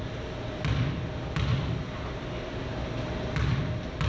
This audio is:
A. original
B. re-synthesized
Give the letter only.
A